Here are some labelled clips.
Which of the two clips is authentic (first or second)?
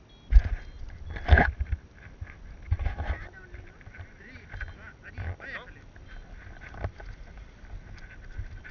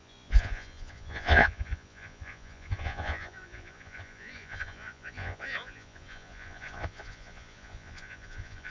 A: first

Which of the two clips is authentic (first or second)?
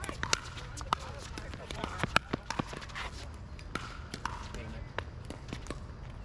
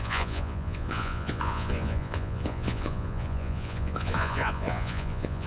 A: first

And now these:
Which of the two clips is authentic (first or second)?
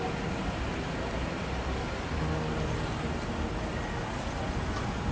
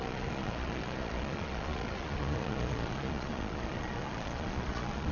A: first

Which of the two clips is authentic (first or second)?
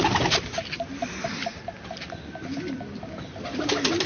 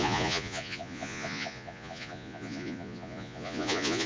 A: first